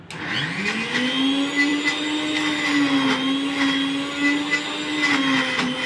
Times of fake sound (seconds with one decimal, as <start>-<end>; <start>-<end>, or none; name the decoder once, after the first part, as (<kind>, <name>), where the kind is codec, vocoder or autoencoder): none